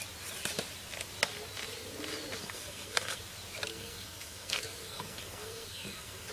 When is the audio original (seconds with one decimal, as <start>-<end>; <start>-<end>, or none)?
0.0-2.4; 3.2-3.7